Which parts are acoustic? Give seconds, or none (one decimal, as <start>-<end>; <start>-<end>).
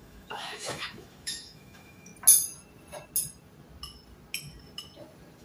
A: 2.1-5.4